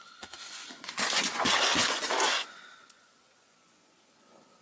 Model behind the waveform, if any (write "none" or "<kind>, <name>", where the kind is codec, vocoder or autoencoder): vocoder, Vocos